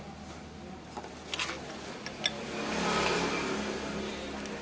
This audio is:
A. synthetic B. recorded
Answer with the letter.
B